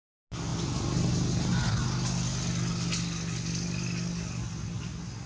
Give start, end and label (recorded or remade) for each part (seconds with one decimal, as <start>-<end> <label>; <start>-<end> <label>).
0.0-5.3 recorded